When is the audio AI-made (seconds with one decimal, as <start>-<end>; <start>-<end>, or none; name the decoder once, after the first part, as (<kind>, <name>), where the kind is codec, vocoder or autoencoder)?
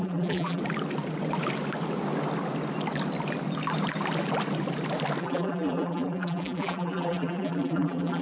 0.0-0.6 (vocoder, BigVGAN v2); 5.2-8.2